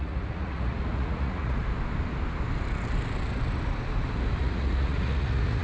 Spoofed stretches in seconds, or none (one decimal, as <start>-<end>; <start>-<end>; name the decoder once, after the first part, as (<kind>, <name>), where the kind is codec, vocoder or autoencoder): 0.0-1.6 (vocoder, Vocos); 4.4-5.6